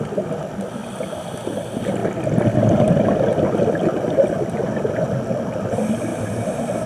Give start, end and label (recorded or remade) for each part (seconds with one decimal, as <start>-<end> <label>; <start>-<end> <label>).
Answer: 0.0-0.8 recorded; 0.8-1.4 remade; 1.4-6.1 recorded; 6.1-6.9 remade